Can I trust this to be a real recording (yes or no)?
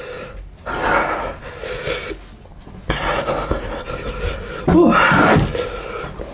yes